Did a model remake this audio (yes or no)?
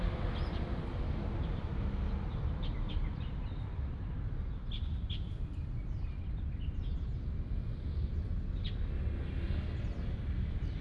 no